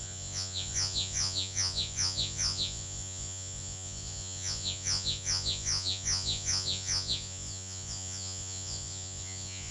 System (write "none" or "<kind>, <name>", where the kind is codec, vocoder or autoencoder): vocoder, Vocos